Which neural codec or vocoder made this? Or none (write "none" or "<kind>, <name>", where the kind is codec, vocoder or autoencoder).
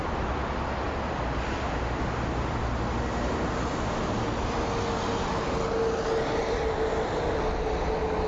none